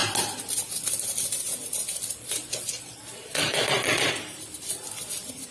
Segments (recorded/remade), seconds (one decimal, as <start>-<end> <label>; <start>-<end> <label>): 0.0-2.2 recorded; 2.2-4.1 remade; 4.1-5.5 recorded